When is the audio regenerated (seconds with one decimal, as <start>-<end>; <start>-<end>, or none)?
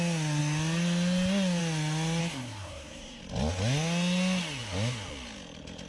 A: 2.2-3.2